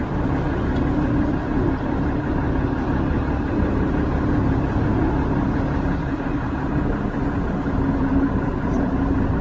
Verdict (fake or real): real